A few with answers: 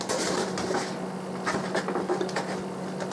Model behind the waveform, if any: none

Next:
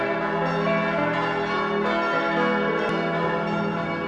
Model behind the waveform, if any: none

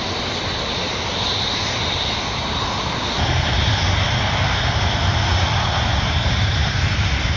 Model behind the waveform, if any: none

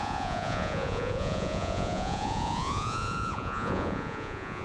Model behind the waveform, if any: vocoder, Vocos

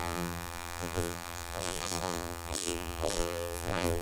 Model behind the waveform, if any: vocoder, BigVGAN v2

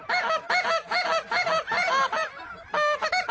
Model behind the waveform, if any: none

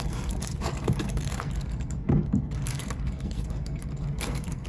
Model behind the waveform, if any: codec, SNAC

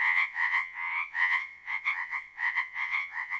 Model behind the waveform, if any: vocoder, WaveNeXt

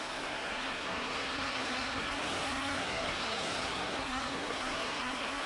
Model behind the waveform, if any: codec, SNAC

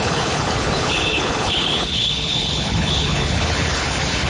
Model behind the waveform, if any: codec, HILCodec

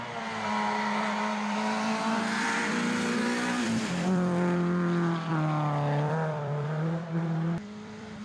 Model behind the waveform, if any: vocoder, BigVGAN v2